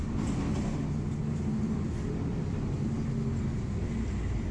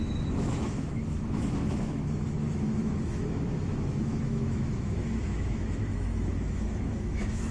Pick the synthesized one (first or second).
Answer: second